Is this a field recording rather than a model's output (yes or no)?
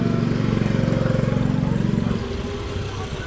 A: yes